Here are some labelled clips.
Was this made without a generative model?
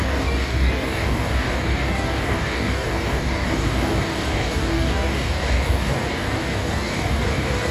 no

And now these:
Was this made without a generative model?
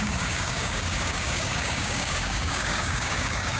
no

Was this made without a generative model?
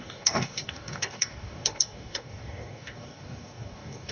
no